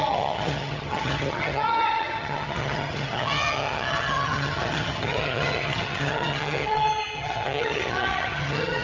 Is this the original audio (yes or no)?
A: no